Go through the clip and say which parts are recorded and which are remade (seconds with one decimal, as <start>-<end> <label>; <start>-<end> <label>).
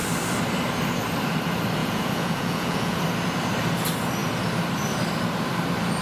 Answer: 0.0-1.8 recorded; 1.8-3.0 remade; 3.0-6.0 recorded